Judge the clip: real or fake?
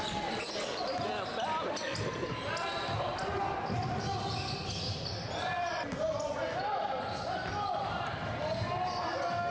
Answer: real